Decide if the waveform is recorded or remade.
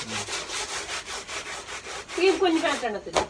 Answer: recorded